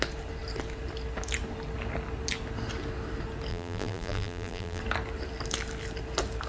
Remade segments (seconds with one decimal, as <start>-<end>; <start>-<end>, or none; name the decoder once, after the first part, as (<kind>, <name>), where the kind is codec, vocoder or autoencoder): 3.5-4.8 (vocoder, BigVGAN v2)